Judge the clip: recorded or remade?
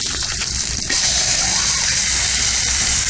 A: remade